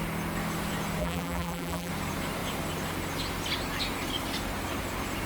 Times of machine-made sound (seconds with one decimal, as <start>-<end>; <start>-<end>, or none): 1.0-1.9

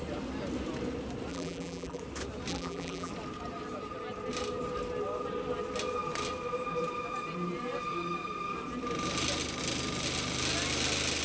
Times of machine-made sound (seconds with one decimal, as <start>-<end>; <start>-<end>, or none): 1.3-2.0; 2.5-3.1

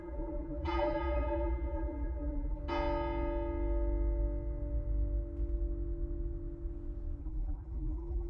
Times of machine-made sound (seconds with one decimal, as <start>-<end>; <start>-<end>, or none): 0.0-2.6; 7.2-8.3

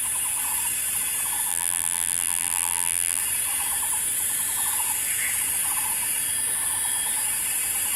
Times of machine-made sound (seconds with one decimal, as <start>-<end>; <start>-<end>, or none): 1.5-3.2

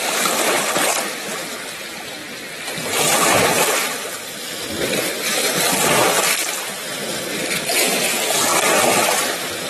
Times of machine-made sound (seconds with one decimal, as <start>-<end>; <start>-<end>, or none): 8.5-9.0

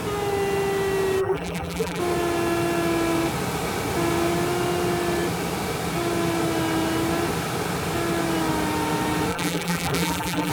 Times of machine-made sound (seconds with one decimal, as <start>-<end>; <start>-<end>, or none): 1.2-2.0; 9.3-10.5

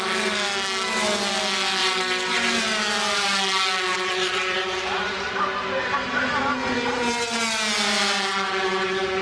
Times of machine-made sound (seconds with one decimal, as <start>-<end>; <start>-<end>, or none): 1.8-2.6; 3.9-5.4

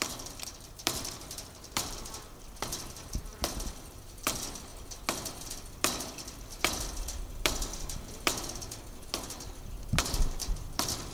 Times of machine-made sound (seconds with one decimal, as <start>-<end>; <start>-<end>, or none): 0.0-3.3; 3.8-4.7; 5.5-8.3; 10.0-11.1